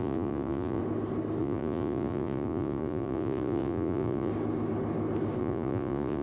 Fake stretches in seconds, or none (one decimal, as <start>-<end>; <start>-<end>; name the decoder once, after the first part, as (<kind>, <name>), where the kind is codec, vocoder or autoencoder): 0.0-0.8 (vocoder, Vocos); 1.4-4.3; 5.4-6.2